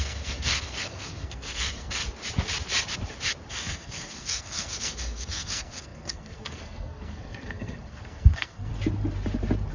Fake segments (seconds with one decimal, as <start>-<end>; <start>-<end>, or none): 0.0-2.0; 3.5-8.7